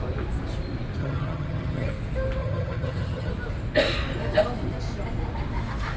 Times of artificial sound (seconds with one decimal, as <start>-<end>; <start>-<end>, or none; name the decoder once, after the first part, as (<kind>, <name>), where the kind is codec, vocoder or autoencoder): 1.0-1.9 (vocoder, HiFi-GAN); 2.4-3.3